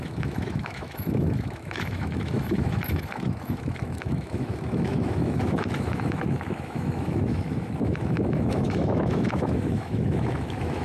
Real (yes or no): no